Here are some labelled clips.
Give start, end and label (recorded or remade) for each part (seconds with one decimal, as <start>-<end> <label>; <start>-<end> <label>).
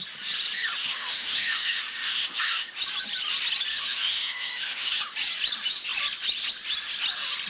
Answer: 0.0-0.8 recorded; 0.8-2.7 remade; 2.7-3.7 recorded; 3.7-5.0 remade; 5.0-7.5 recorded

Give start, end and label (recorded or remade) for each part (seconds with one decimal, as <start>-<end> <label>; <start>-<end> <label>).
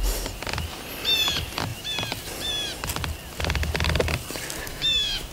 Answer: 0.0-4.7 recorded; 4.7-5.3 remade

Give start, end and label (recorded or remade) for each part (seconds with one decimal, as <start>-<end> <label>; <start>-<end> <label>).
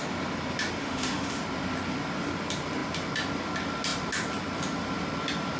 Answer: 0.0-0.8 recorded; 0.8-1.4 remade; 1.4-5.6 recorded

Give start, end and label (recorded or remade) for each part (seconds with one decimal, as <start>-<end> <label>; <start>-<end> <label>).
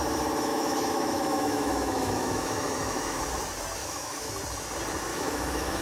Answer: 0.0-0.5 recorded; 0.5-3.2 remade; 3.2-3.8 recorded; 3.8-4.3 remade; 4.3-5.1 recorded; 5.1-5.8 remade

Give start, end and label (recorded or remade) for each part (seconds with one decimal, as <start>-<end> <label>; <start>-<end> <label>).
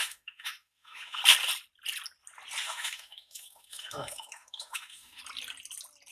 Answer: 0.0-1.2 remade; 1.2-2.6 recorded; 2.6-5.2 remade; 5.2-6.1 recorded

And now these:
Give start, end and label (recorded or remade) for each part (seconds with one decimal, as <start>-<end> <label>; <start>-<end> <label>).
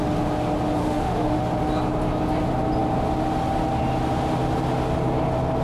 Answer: 0.0-0.8 recorded; 0.8-1.4 remade; 1.4-5.6 recorded